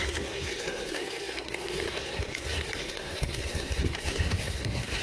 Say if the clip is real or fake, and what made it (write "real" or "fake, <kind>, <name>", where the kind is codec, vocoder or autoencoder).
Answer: fake, codec, SNAC